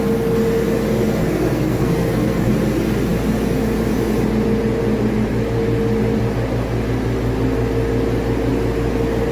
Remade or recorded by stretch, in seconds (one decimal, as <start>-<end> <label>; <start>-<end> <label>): 0.0-1.2 recorded; 1.2-2.5 remade; 2.5-9.3 recorded